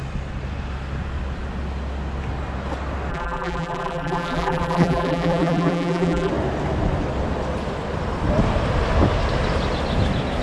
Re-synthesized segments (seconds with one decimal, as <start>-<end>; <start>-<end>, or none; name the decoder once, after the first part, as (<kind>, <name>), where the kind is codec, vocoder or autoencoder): 3.1-6.3 (vocoder, BigVGAN v2)